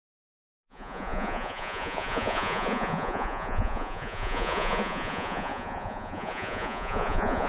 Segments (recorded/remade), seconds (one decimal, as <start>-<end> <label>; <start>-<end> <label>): 0.0-7.5 remade